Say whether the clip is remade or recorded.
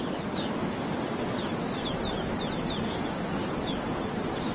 recorded